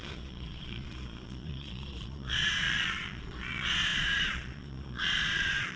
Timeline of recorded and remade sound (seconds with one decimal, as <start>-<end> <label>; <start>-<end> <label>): 0.0-5.8 remade